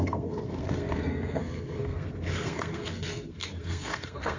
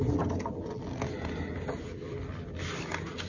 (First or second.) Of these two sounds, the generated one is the first